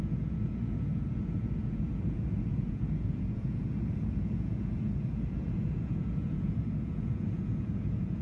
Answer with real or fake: fake